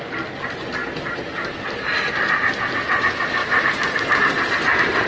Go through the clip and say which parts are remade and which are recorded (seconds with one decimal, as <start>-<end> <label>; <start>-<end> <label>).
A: 0.0-0.8 recorded; 0.8-1.6 remade; 1.6-3.4 recorded; 3.4-5.1 remade